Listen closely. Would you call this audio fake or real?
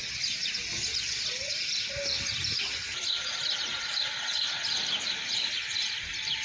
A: real